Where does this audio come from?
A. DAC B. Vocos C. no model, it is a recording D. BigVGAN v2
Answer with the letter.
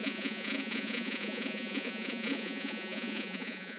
B